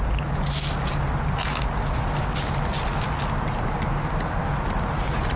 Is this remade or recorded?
recorded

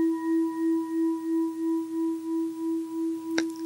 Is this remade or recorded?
recorded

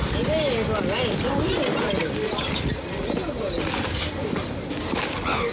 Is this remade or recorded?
recorded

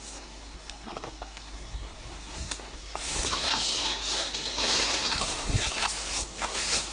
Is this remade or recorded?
remade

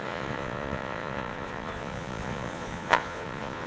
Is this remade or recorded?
remade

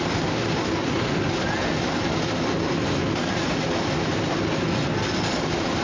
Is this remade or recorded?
recorded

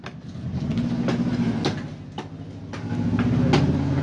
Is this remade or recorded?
recorded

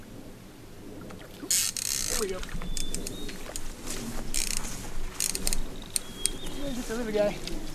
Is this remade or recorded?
recorded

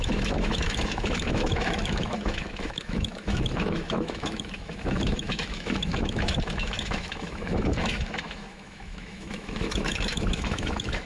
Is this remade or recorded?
remade